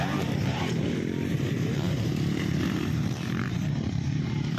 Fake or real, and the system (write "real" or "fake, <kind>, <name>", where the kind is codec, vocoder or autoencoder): fake, vocoder, BigVGAN v2